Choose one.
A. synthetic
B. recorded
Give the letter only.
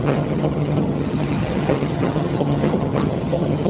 A